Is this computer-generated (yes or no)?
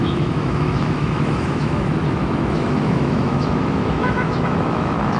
yes